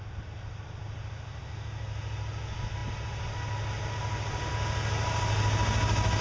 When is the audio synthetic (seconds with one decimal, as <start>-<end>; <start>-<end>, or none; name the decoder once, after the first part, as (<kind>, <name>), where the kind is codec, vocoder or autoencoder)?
none

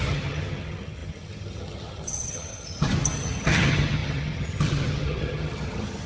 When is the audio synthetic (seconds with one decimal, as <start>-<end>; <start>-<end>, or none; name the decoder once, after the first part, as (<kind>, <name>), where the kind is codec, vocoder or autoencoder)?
0.0-6.1 (vocoder, HiFi-GAN)